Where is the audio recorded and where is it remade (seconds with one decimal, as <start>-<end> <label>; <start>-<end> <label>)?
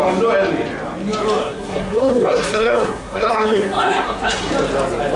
0.0-1.4 recorded; 1.4-4.5 remade; 4.5-5.2 recorded